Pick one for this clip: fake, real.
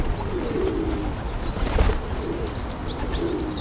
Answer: real